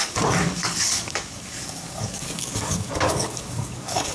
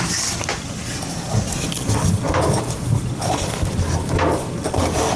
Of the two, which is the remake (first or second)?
first